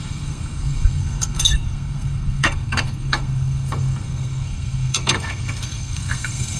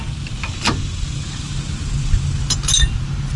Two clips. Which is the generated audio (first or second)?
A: first